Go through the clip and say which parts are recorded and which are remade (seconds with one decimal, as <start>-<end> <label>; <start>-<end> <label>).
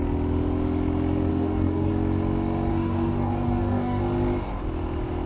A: 0.0-1.3 recorded; 1.3-1.9 remade; 1.9-2.7 recorded; 2.7-4.0 remade; 4.0-5.3 recorded